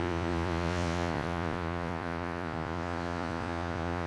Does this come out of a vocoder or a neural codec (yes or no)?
yes